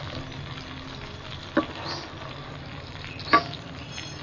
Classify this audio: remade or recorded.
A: recorded